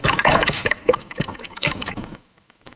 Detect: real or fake fake